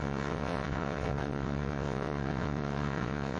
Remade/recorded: remade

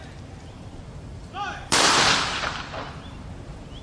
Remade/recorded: remade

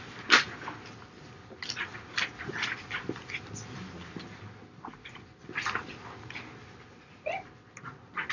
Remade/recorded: recorded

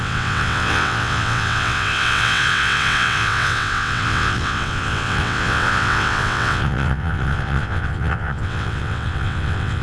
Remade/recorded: remade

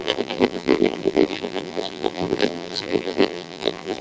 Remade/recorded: remade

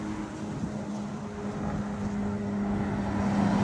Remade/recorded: recorded